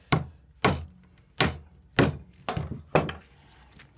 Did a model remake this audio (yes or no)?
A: no